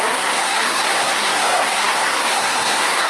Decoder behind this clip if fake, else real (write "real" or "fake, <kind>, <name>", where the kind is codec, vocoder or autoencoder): fake, codec, SNAC